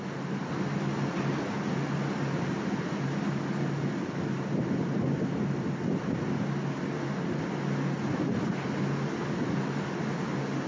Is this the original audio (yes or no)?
yes